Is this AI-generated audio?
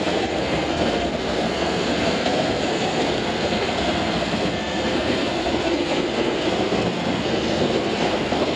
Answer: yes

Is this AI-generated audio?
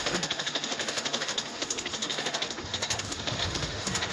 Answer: yes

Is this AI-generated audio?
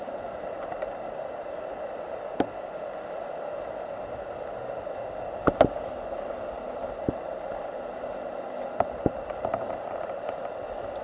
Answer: no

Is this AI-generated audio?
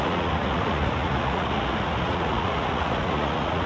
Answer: yes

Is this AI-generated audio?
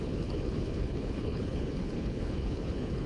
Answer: yes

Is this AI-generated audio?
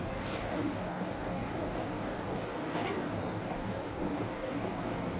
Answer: yes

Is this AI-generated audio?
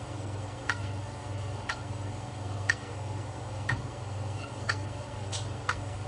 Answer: yes